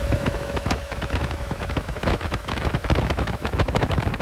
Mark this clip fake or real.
fake